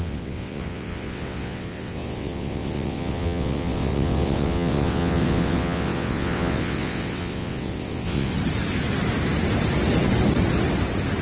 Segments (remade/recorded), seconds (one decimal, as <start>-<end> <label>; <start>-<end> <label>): 0.0-8.3 remade; 8.3-11.2 recorded